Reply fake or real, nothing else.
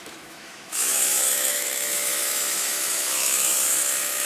fake